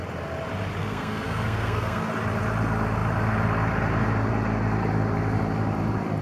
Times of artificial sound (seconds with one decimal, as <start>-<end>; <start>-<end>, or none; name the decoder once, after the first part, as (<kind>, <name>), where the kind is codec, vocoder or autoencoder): 0.8-2.0 (codec, SNAC)